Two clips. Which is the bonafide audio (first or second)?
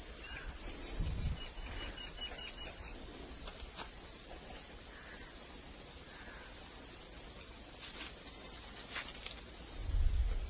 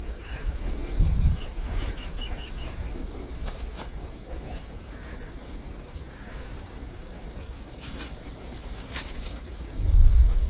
first